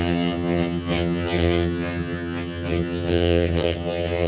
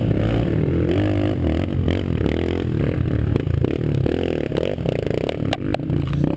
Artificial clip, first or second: first